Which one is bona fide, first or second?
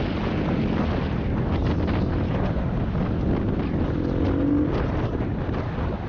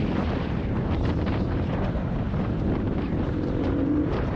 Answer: first